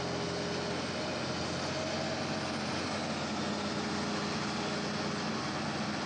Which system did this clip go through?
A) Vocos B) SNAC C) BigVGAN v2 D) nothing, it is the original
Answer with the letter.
D